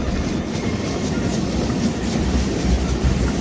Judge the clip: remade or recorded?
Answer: remade